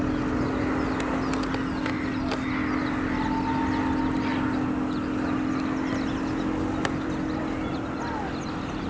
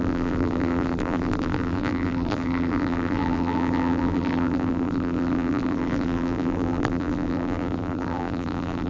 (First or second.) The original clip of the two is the first